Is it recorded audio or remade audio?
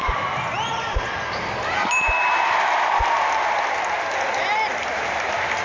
recorded